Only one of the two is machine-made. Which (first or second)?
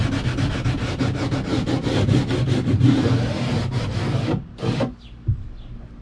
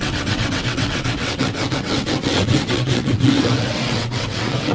second